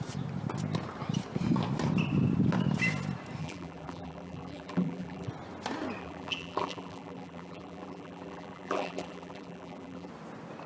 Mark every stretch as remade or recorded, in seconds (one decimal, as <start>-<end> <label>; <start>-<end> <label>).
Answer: 0.0-3.4 recorded; 3.4-5.3 remade; 5.3-6.0 recorded; 6.0-10.1 remade; 10.1-10.7 recorded